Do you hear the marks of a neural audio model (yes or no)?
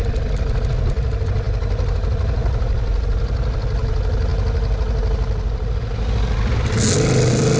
no